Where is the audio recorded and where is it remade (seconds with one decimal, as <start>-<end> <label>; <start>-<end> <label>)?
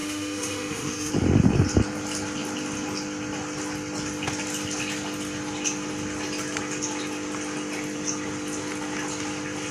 0.0-1.1 remade; 1.1-9.7 recorded